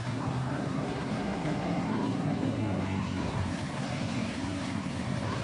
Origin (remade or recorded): remade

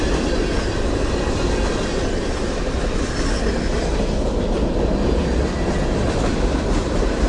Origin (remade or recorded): recorded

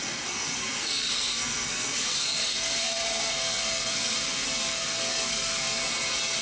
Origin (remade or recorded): remade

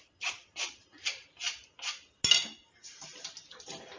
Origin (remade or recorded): recorded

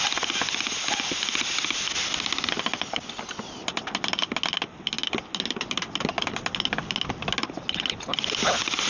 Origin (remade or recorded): recorded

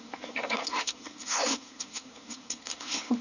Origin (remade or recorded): remade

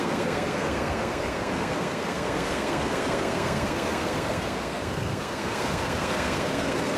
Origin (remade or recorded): remade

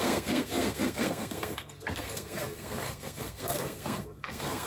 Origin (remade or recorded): remade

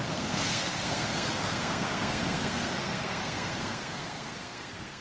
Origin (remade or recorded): remade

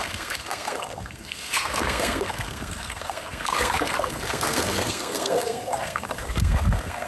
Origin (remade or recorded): remade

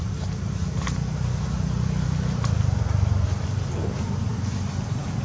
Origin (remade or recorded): recorded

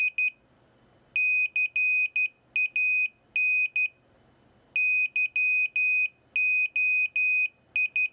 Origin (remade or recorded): recorded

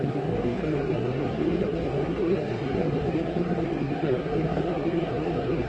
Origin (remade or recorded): remade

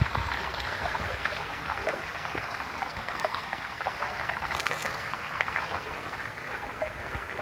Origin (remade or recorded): remade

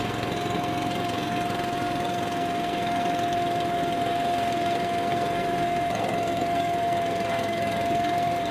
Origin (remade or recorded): remade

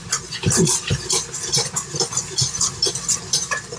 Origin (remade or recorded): recorded